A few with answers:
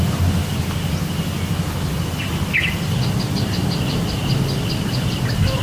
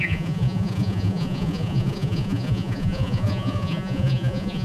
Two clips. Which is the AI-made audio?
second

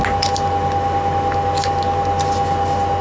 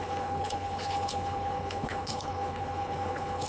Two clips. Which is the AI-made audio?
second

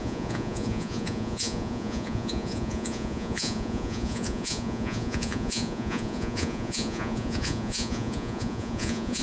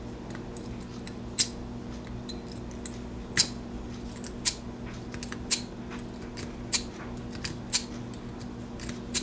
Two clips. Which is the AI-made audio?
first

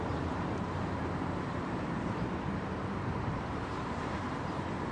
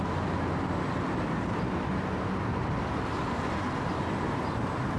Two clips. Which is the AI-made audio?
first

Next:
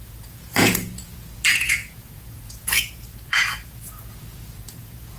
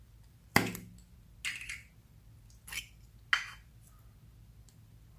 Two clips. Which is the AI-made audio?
first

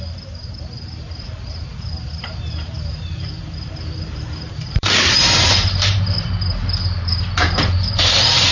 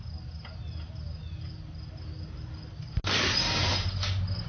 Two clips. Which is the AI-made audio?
first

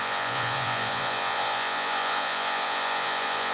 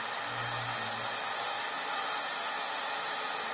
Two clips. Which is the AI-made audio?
first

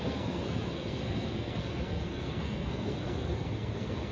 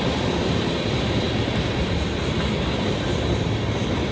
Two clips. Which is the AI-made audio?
first